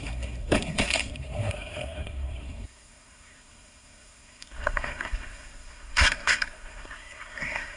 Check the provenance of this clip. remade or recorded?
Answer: remade